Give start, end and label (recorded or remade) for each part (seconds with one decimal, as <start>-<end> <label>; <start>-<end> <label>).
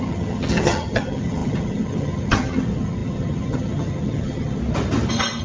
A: 0.0-4.6 remade; 4.6-5.4 recorded